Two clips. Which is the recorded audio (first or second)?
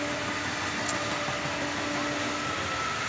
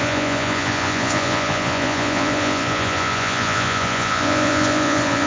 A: first